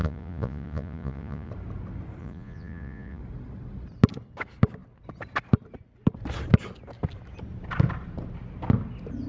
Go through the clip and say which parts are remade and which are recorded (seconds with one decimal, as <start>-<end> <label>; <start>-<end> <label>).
0.0-1.5 remade; 1.5-2.2 recorded; 2.2-3.2 remade; 3.2-9.3 recorded

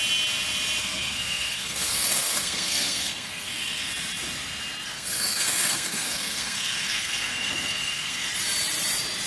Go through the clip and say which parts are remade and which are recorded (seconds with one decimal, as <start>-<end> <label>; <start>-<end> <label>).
0.0-0.8 recorded; 0.8-3.9 remade; 3.9-4.9 recorded; 4.9-8.3 remade; 8.3-9.3 recorded